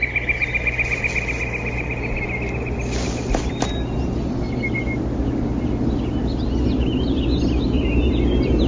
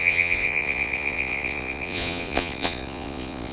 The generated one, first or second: second